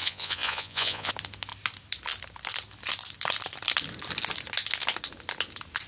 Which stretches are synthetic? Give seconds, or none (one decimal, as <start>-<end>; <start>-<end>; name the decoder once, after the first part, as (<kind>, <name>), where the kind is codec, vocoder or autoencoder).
0.0-1.1 (vocoder, Vocos)